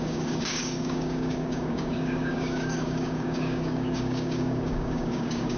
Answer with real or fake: fake